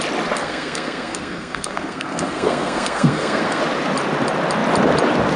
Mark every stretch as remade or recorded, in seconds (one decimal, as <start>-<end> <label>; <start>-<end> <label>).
0.0-0.4 recorded; 0.4-3.6 remade; 3.6-5.4 recorded